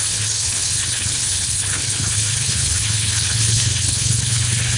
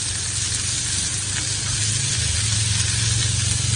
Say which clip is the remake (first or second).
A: first